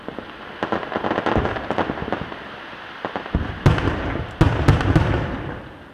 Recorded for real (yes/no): yes